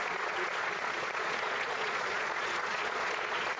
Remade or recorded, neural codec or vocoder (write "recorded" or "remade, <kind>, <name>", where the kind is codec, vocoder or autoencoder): remade, vocoder, Vocos